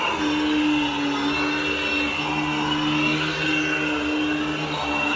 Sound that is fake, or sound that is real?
real